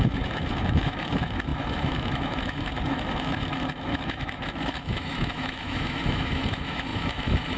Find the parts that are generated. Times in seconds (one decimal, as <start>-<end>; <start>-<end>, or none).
0.0-7.6

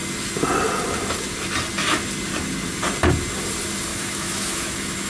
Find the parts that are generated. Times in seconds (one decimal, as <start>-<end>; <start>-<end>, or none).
3.9-5.1

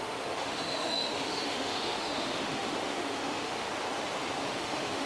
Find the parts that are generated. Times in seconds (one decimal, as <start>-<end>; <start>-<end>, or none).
0.0-3.7; 4.5-5.1

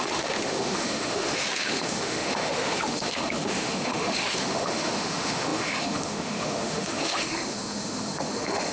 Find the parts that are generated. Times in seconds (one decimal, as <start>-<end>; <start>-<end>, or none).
0.0-8.7